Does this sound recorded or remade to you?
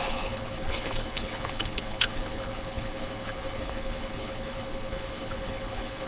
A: remade